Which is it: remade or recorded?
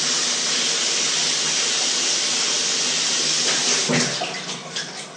recorded